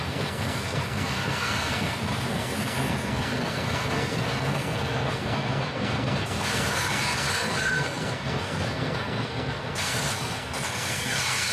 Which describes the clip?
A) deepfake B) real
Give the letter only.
A